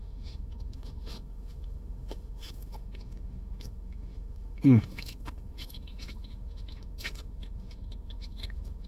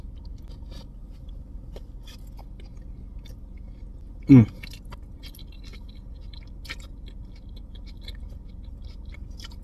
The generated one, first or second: first